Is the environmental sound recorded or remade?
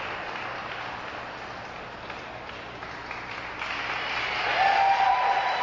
recorded